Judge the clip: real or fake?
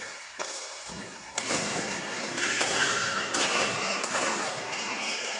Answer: fake